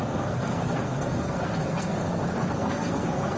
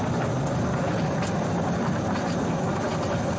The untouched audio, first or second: second